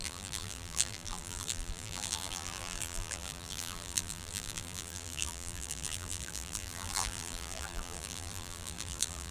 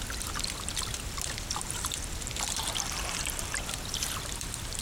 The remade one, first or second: first